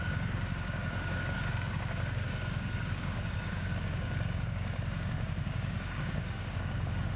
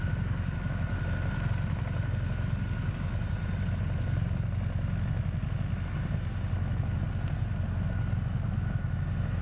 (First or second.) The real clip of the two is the second